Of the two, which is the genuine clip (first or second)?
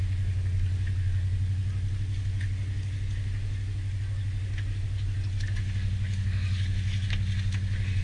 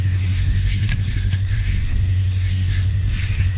first